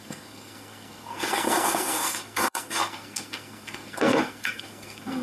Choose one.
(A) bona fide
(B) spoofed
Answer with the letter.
B